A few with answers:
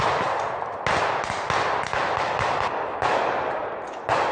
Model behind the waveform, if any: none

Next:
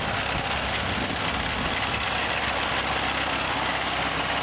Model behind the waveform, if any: none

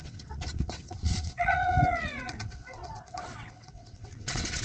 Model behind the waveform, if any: vocoder, WaveNeXt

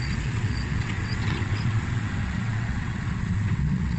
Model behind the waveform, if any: vocoder, WaveNeXt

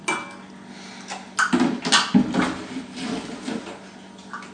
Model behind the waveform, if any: none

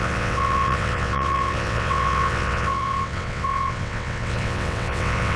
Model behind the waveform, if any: vocoder, WaveNeXt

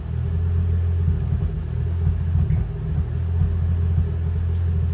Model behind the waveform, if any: none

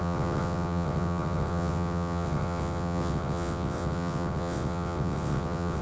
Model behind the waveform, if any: vocoder, WaveNeXt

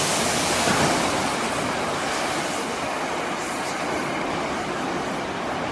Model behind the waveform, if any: none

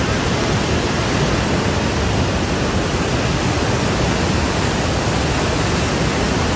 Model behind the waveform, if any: none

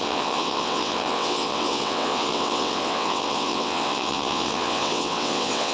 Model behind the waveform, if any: vocoder, WaveNeXt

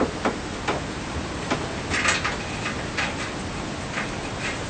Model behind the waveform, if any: none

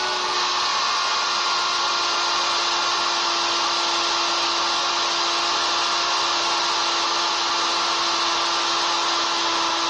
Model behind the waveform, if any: none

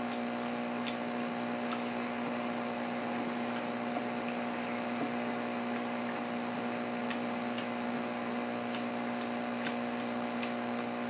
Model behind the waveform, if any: none